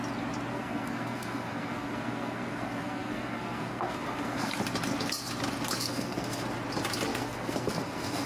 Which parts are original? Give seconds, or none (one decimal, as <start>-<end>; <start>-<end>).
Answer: 0.0-0.5; 4.5-5.8; 6.4-7.1